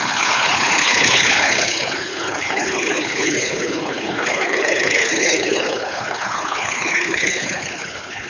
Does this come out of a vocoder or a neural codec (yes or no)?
yes